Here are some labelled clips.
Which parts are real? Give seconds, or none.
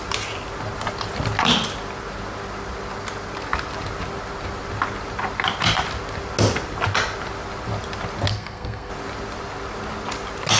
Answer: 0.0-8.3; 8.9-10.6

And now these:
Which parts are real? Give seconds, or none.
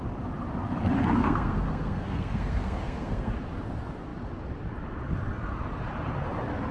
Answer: 0.0-1.2; 3.3-6.7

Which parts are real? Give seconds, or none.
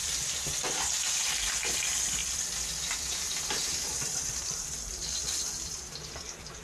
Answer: 1.5-2.2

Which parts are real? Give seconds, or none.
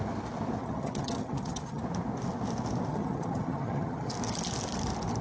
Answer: 0.0-0.6; 1.8-2.9; 4.1-5.2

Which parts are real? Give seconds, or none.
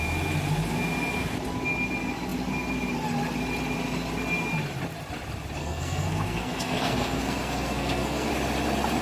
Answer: 0.0-5.6; 8.3-9.0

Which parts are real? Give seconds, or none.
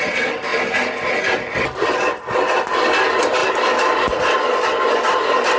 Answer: 0.0-5.6